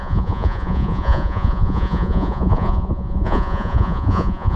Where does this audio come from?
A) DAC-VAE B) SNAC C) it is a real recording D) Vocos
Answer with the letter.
D